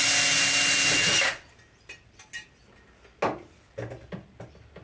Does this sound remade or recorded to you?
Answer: recorded